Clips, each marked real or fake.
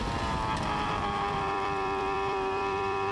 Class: fake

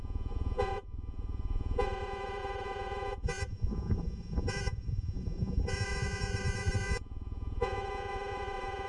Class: fake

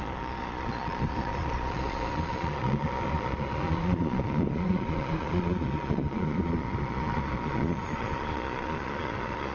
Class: fake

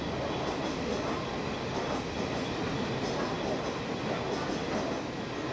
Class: real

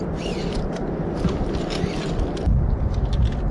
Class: real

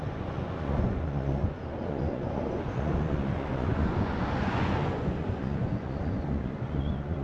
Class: fake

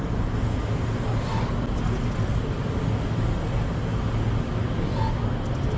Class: real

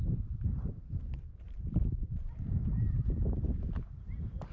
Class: fake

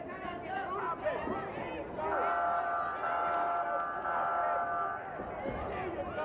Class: real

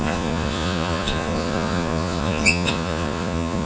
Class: fake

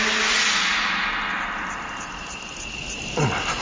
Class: real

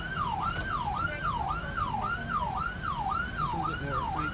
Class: real